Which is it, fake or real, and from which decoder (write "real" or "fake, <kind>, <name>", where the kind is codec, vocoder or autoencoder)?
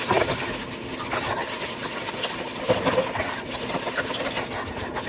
real